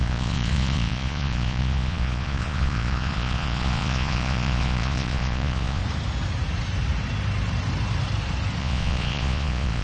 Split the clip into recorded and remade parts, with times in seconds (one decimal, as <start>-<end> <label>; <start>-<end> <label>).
0.0-5.8 remade; 5.8-8.6 recorded; 8.6-9.8 remade